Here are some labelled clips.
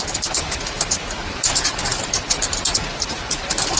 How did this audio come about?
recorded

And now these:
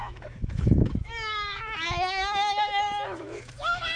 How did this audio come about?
remade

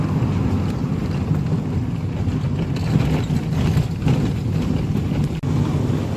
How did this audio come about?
recorded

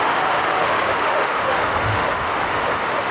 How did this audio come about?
remade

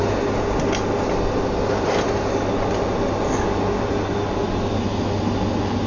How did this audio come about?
recorded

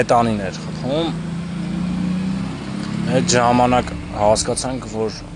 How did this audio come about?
recorded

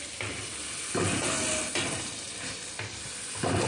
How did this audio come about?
recorded